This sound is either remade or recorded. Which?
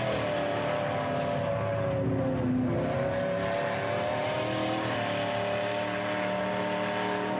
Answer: recorded